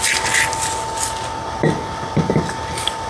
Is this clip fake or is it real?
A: real